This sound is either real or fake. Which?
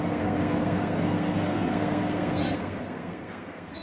fake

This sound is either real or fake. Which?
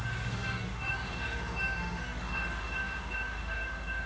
fake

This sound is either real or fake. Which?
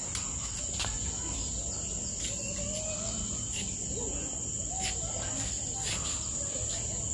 real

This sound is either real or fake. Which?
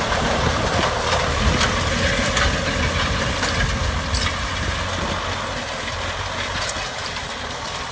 real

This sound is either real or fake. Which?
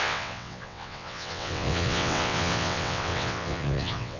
fake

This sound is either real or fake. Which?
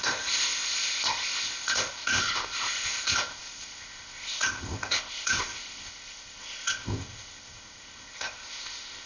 fake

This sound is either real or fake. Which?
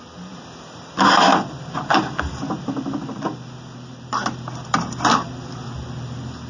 real